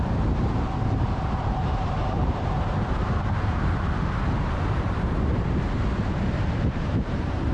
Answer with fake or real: fake